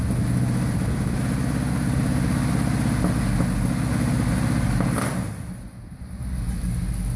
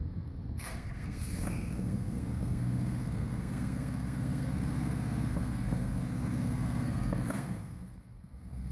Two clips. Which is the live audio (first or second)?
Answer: first